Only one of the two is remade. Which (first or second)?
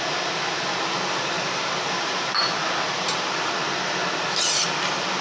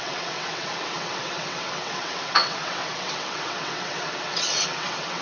second